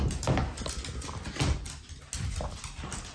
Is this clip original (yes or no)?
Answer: yes